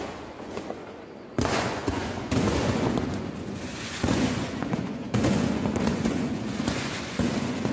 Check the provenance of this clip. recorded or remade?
remade